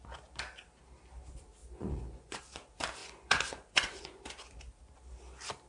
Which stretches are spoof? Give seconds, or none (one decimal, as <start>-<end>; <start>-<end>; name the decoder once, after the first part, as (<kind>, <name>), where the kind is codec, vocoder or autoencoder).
1.6-2.4 (vocoder, Vocos); 3.0-4.2

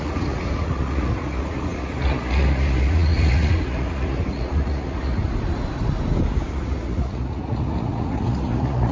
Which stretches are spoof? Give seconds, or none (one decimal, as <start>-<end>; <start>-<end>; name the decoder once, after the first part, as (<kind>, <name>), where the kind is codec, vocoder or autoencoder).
0.0-5.2 (vocoder, Vocos); 6.5-8.9

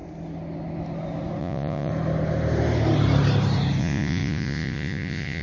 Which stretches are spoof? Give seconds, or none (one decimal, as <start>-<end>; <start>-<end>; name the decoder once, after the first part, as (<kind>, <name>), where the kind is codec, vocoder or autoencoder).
1.4-1.9 (vocoder, Vocos); 3.8-5.4

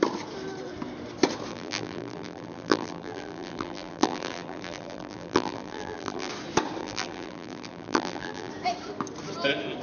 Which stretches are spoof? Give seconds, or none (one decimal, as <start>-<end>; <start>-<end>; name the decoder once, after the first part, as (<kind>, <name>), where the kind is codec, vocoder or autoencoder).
1.5-6.3 (vocoder, BigVGAN v2); 6.8-8.5

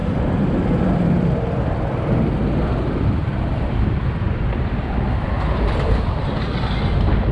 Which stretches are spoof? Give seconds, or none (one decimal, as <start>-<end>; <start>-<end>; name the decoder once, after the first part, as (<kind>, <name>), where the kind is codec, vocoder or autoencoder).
0.0-7.3 (vocoder, BigVGAN v2)